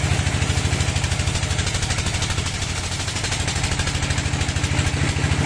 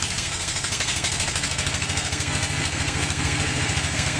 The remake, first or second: second